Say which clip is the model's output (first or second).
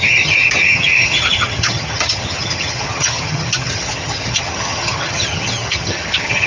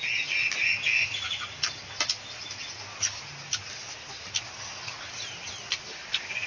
first